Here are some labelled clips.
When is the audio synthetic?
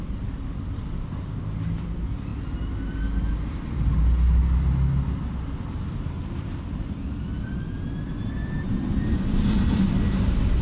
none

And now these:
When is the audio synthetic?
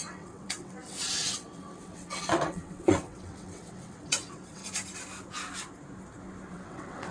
0.0-4.6 (vocoder, WaveNeXt); 6.5-7.1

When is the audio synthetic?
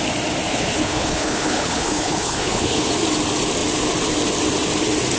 0.5-2.9 (codec, HILCodec)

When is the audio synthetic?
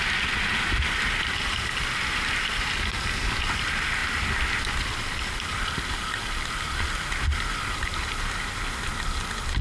none